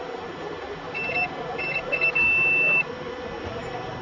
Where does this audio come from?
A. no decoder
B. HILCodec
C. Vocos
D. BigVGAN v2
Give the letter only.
A